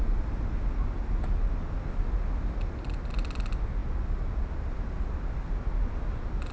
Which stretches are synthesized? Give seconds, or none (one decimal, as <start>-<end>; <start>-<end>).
none